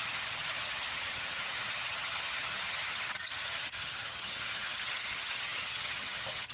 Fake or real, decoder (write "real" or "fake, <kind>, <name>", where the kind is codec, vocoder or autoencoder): fake, vocoder, HiFi-GAN